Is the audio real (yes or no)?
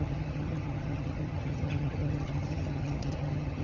no